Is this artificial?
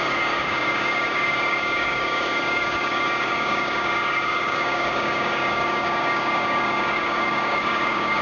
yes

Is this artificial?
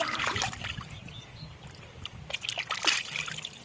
no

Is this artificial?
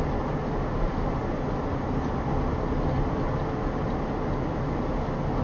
no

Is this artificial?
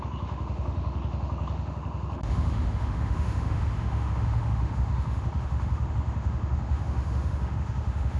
yes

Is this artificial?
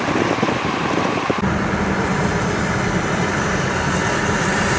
yes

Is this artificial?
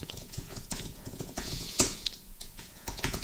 yes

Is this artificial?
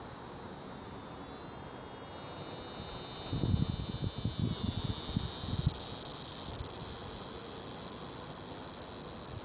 no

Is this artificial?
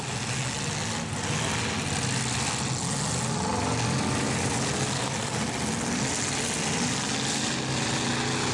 no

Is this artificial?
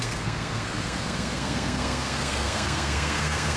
yes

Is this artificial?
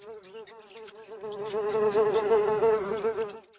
no